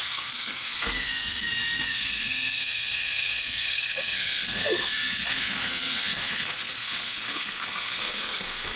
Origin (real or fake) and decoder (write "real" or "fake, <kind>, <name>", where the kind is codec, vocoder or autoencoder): fake, codec, SNAC